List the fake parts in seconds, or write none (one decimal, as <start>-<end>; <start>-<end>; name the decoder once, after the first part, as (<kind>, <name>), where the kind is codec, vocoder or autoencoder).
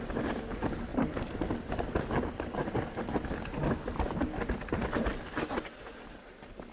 0.9-1.5 (vocoder, BigVGAN v2)